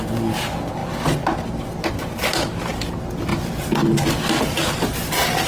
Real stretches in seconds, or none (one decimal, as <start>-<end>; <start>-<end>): 0.0-5.5